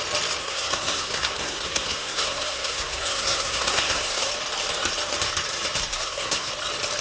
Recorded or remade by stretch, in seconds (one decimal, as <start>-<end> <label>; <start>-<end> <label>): 0.0-0.4 recorded; 0.4-4.3 remade; 4.3-5.9 recorded; 5.9-6.5 remade; 6.5-7.0 recorded